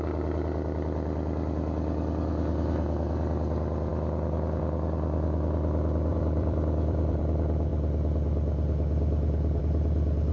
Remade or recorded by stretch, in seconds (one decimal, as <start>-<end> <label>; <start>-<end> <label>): 0.0-6.1 recorded; 6.1-7.2 remade; 7.2-10.3 recorded